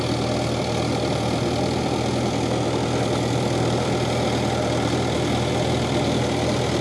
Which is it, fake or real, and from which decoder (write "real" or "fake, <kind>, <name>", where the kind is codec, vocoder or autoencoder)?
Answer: real